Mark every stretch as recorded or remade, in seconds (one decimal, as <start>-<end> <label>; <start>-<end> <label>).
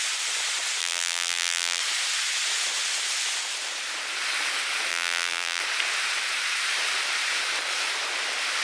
0.0-0.8 recorded; 0.8-1.8 remade; 1.8-4.9 recorded; 4.9-5.6 remade; 5.6-8.6 recorded